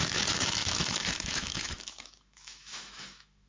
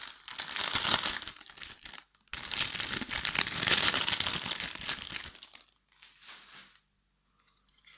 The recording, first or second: second